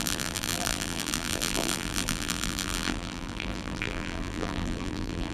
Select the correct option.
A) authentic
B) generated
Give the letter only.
B